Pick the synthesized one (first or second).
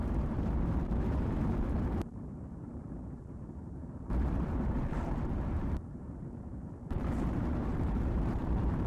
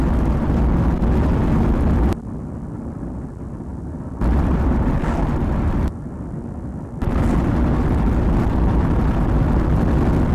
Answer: first